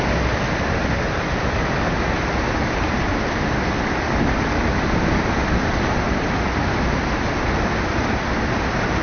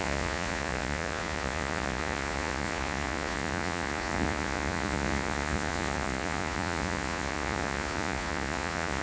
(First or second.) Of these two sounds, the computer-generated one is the second